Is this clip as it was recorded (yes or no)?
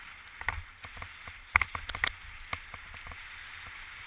yes